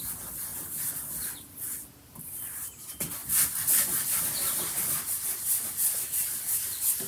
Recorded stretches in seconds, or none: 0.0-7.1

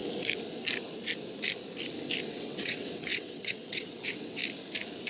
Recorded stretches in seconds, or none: 0.0-2.3; 4.4-5.1

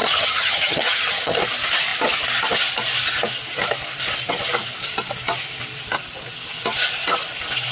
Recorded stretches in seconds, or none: 1.4-7.7

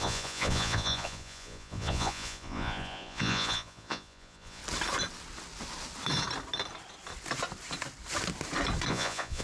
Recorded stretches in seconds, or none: 4.6-8.9

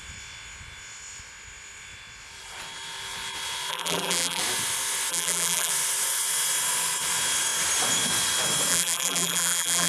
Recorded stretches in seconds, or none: 0.0-3.7; 4.4-5.1; 5.7-8.7

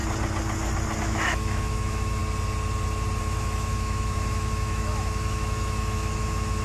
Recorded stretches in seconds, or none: 0.0-1.0; 2.2-3.2